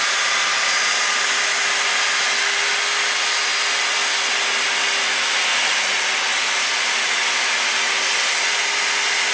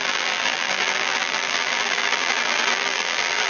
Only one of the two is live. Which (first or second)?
first